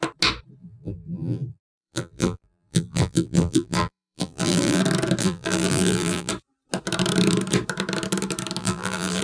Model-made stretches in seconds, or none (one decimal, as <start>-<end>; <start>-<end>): 0.6-4.8; 5.2-6.3; 8.6-9.2